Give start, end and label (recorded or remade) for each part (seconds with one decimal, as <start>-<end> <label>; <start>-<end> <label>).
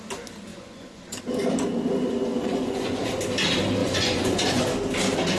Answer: 0.0-0.5 recorded; 0.5-1.2 remade; 1.2-2.3 recorded; 2.3-3.1 remade; 3.1-3.8 recorded; 3.8-4.6 remade; 4.6-5.4 recorded